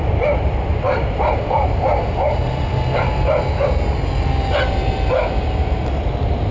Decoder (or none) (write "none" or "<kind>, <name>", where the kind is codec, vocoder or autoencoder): none